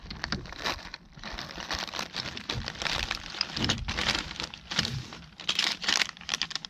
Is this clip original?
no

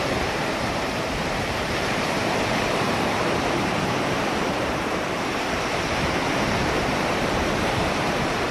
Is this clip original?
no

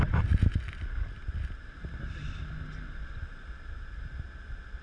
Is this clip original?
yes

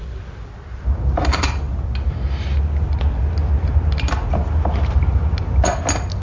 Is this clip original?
yes